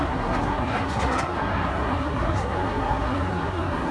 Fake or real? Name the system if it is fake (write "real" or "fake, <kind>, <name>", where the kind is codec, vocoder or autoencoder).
fake, codec, SNAC